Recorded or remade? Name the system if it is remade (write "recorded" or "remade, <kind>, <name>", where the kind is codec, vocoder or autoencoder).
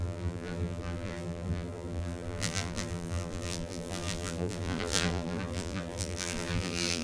remade, vocoder, BigVGAN v2